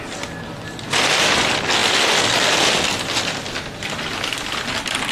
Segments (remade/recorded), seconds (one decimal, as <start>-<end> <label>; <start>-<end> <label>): 0.0-5.1 recorded